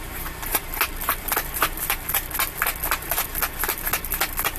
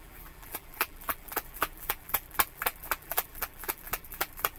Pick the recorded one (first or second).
first